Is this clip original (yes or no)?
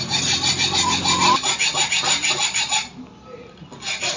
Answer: yes